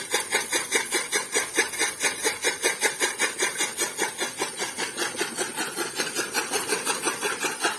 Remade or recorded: recorded